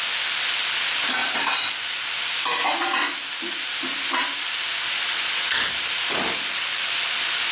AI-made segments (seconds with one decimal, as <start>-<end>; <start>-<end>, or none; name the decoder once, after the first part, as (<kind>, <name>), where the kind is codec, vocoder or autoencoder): none